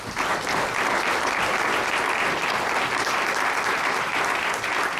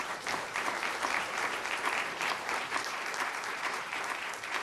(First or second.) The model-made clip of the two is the second